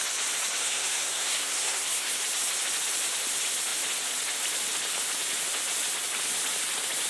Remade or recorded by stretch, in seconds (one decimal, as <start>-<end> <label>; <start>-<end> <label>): 0.0-0.6 recorded; 0.6-2.2 remade; 2.2-7.1 recorded